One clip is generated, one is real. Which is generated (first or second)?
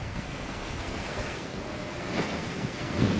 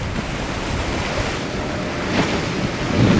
first